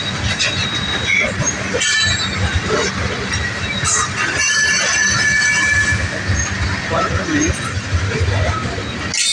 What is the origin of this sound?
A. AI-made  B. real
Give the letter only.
B